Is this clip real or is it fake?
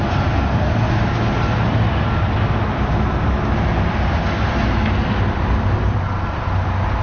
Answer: real